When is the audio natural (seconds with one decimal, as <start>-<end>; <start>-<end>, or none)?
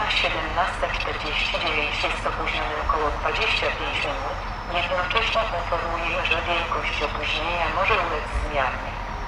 0.0-9.3